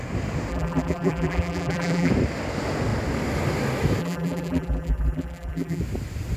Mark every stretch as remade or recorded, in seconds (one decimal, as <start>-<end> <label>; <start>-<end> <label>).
0.0-0.5 recorded; 0.5-2.1 remade; 2.1-4.0 recorded; 4.0-5.8 remade; 5.8-6.4 recorded